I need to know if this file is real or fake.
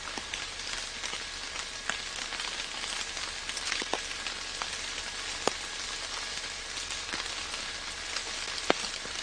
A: real